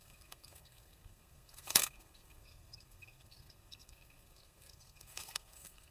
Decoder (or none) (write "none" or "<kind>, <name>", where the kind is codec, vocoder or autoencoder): codec, SNAC